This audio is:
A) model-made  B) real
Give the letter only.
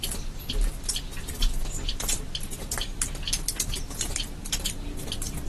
B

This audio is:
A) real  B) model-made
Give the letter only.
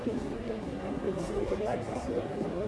B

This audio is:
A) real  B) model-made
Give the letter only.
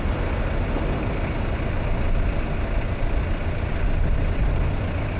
A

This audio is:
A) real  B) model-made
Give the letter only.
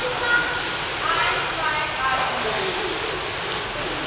A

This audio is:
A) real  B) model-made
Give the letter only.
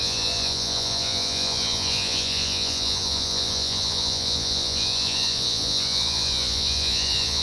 B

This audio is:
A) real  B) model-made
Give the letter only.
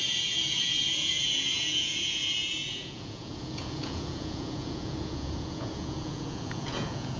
B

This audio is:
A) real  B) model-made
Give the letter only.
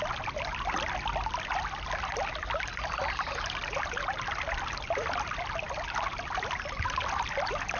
A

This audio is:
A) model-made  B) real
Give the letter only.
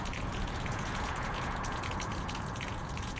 A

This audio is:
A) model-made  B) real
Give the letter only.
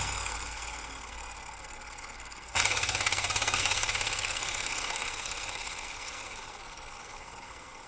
A